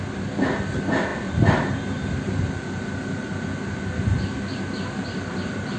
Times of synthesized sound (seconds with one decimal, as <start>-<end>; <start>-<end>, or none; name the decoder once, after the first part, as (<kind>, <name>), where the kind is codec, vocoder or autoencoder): 0.0-5.8 (vocoder, BigVGAN v2)